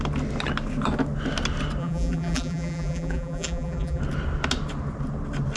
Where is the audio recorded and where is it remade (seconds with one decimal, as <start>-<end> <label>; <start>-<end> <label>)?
0.0-1.8 recorded; 1.8-4.0 remade; 4.0-5.6 recorded